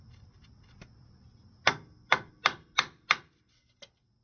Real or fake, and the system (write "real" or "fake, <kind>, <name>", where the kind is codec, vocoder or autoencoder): real